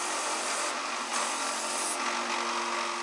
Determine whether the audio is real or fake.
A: real